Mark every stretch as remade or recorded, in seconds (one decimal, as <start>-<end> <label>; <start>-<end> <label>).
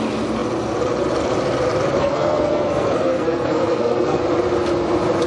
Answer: 0.0-2.0 recorded; 2.0-4.2 remade; 4.2-5.3 recorded